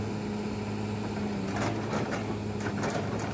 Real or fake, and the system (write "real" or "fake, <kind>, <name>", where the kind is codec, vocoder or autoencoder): real